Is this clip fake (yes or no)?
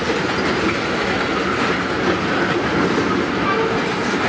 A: no